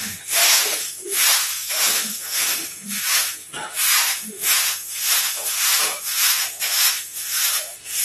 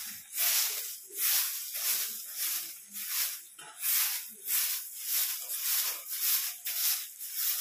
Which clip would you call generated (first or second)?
first